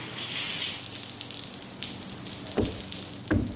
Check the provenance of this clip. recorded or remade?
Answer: recorded